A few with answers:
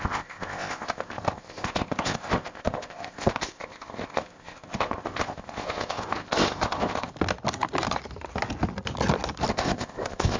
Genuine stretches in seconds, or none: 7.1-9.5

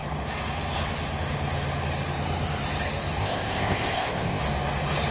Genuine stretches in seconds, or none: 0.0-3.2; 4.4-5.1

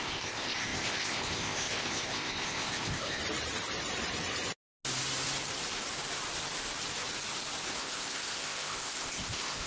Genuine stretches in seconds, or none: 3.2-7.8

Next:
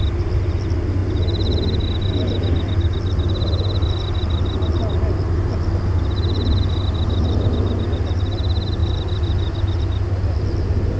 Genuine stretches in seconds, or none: 0.0-11.0

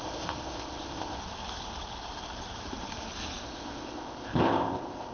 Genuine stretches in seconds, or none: 1.2-3.4